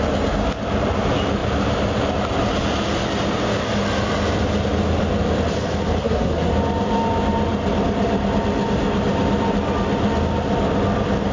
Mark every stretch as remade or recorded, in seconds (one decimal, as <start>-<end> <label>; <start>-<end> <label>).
0.0-6.0 recorded; 6.0-6.5 remade; 6.5-11.3 recorded